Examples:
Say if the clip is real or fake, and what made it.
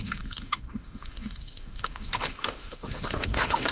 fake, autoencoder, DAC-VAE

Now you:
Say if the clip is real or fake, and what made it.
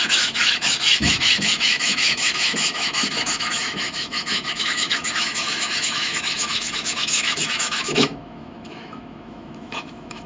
fake, autoencoder, DAC-VAE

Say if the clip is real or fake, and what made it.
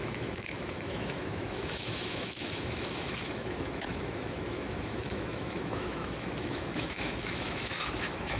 fake, autoencoder, DAC-VAE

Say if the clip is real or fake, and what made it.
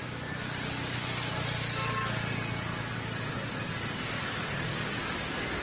real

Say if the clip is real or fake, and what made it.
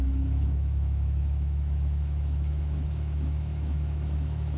fake, autoencoder, DAC-VAE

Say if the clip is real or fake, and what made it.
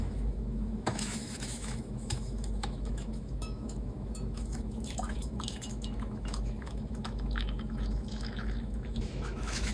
fake, autoencoder, DAC-VAE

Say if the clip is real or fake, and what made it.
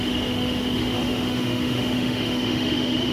fake, autoencoder, DAC-VAE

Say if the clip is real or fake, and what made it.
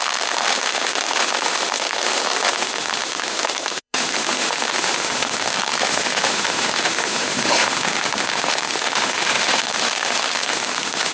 fake, autoencoder, DAC-VAE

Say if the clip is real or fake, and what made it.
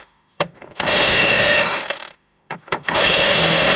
fake, autoencoder, DAC-VAE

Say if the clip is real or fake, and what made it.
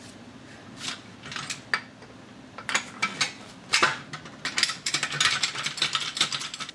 real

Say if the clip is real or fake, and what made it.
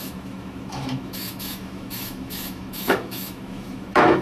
fake, autoencoder, DAC-VAE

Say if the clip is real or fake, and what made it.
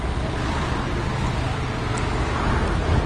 real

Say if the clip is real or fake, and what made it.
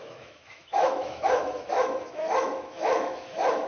fake, autoencoder, DAC-VAE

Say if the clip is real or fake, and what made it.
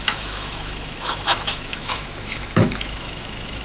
fake, autoencoder, DAC-VAE